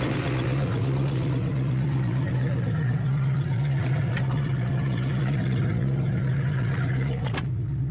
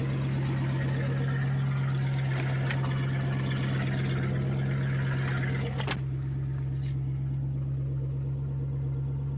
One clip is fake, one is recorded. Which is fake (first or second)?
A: first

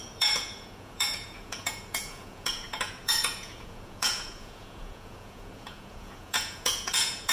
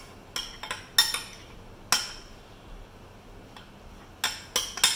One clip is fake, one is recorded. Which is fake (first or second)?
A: first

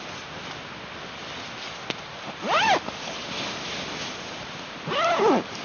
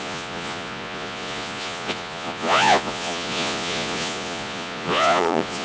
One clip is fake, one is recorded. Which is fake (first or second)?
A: second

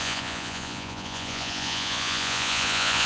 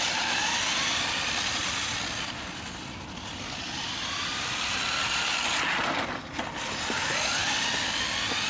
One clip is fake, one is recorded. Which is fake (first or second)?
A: first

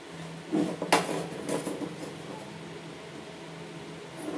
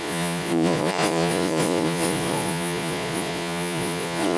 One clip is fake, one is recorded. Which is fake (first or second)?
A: second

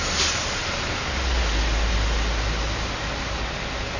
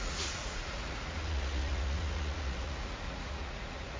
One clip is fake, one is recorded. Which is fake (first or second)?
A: second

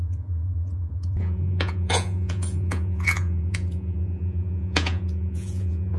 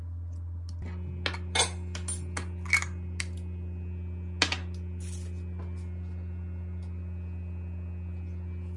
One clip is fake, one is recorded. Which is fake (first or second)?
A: first